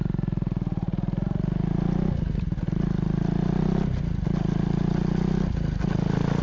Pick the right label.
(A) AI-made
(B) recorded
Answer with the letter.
B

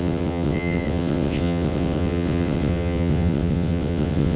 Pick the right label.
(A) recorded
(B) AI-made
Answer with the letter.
B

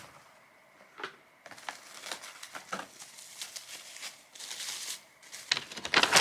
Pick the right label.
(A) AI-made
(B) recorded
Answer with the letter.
B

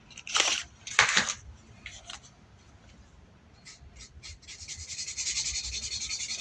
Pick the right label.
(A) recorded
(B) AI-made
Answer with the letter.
B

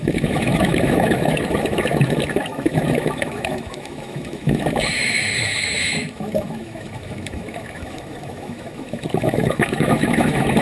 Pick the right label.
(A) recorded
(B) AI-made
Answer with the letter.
B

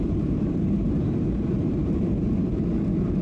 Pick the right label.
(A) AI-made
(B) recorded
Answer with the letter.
A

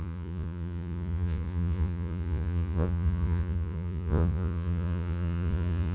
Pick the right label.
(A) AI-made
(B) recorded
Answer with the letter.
A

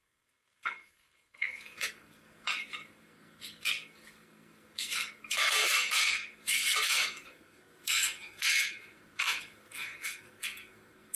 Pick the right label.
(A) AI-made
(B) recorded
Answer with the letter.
A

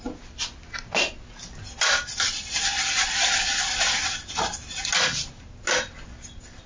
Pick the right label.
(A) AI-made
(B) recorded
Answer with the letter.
B